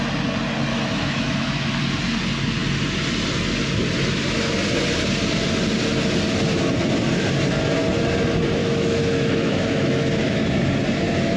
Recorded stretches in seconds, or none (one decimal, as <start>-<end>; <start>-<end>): 0.0-0.7; 1.8-8.6; 10.5-11.4